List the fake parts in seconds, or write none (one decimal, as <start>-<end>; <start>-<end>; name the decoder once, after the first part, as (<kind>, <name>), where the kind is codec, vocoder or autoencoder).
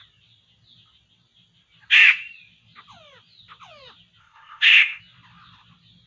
4.2-5.0 (codec, ZipCodec)